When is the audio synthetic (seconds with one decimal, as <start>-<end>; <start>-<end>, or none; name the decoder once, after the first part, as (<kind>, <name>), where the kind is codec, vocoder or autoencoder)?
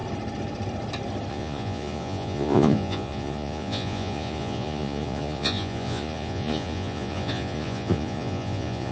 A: 1.3-8.9 (vocoder, Vocos)